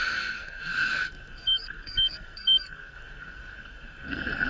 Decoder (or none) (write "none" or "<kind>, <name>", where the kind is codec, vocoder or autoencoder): codec, SNAC